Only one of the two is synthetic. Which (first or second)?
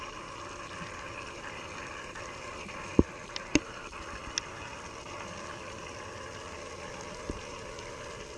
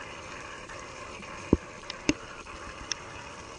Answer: second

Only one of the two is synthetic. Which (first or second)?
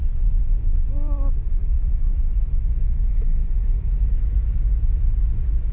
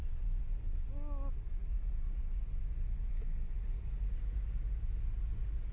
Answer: first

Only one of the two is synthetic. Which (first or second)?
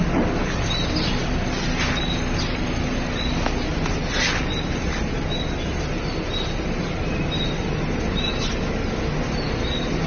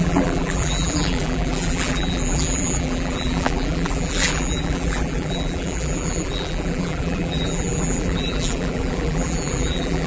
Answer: second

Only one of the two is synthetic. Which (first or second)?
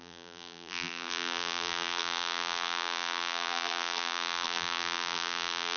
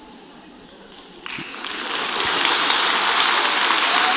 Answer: first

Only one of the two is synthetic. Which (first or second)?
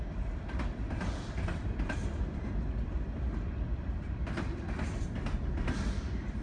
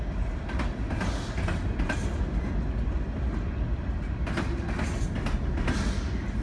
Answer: first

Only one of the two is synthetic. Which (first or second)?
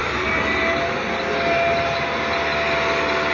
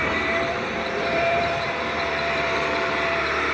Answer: second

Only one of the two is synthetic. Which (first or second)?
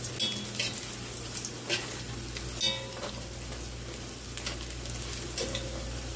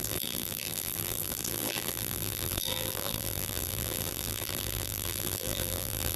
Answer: second